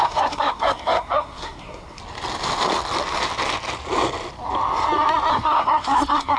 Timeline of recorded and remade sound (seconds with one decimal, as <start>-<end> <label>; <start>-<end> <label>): 0.0-2.0 remade; 2.0-5.3 recorded; 5.3-6.4 remade